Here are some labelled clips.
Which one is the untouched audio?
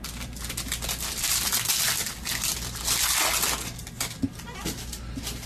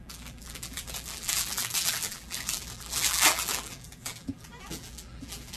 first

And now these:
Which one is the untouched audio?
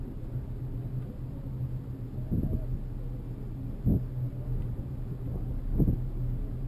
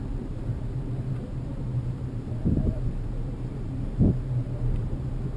first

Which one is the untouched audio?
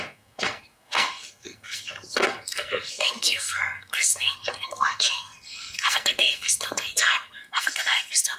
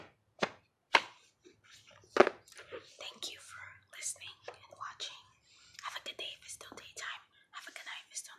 second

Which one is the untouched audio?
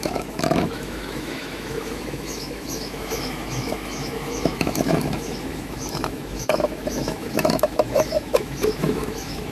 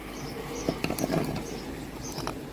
second